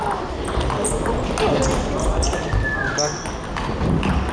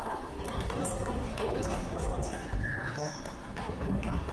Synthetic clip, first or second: second